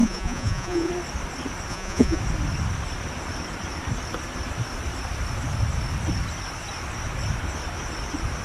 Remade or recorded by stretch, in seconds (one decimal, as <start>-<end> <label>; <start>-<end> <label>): 0.0-0.9 remade; 0.9-1.7 recorded; 1.7-2.2 remade; 2.2-8.4 recorded